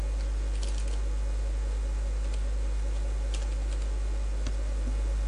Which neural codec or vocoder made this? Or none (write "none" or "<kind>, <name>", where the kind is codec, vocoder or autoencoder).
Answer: none